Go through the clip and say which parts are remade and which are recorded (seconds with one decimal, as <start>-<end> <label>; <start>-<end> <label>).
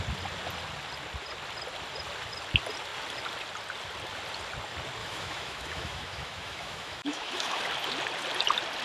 0.0-5.0 recorded; 5.0-7.6 remade; 7.6-8.8 recorded